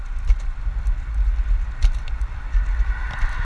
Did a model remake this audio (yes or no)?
no